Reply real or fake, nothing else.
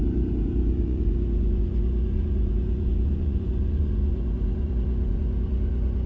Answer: fake